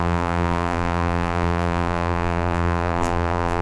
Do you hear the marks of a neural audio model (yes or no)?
yes